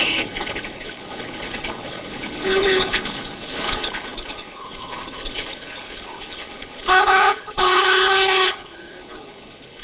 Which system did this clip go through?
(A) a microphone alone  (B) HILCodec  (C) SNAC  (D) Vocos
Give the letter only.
B